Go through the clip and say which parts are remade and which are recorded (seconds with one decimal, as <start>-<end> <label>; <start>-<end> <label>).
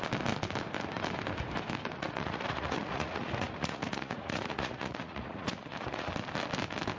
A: 0.0-1.9 recorded; 1.9-6.1 remade; 6.1-7.0 recorded